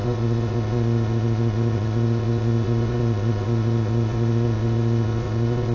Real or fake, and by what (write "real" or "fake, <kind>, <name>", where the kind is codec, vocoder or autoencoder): fake, vocoder, Vocos